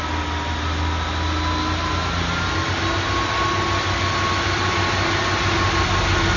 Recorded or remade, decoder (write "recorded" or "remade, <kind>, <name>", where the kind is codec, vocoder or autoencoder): recorded